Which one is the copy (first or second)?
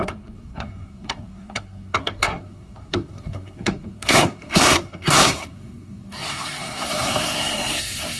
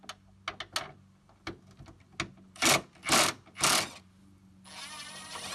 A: first